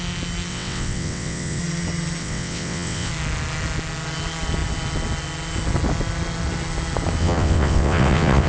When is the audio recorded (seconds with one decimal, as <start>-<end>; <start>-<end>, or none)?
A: 0.0-0.5; 1.6-2.2; 3.1-7.2